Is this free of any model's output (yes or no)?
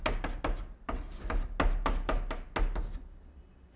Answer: yes